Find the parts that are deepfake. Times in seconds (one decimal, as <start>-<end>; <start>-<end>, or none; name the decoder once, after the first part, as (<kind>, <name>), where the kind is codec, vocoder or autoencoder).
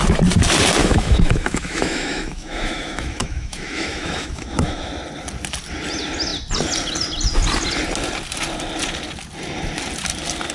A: 0.8-4.9 (autoencoder, DAC-VAE)